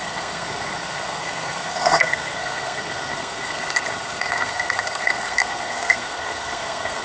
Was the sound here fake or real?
fake